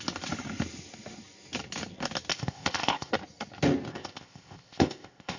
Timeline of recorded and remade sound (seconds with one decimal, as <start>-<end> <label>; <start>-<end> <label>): 0.0-2.3 recorded; 2.3-3.1 remade; 3.1-3.9 recorded; 3.9-5.4 remade